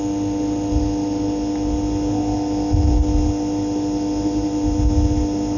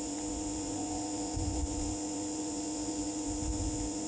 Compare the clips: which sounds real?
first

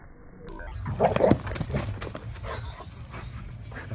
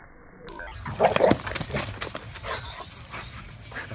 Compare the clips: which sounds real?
first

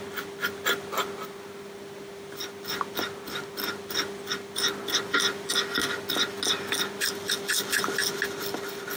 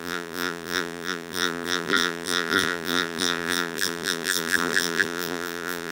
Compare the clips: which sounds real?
first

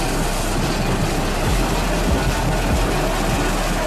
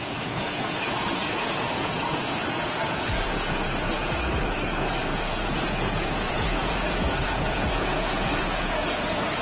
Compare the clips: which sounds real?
first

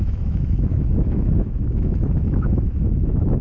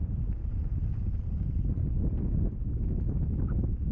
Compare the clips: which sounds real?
second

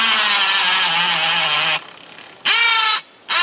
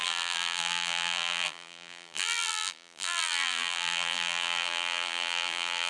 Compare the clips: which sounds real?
first